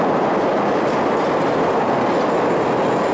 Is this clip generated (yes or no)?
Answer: no